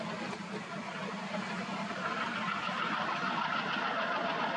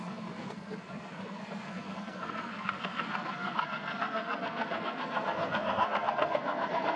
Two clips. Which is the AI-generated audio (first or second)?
second